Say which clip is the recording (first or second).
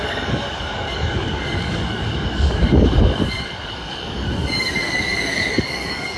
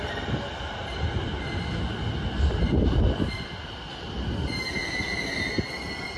second